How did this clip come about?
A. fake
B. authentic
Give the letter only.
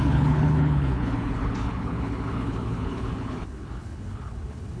A